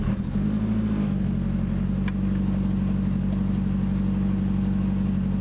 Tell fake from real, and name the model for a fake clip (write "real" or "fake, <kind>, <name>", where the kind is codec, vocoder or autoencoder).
real